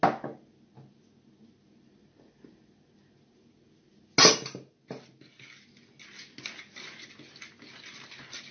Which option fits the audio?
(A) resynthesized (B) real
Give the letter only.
B